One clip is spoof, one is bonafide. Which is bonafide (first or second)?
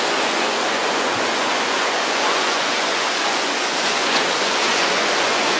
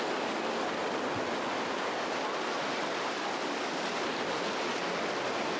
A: second